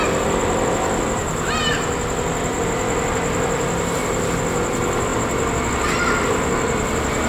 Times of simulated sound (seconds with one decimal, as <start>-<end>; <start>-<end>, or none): none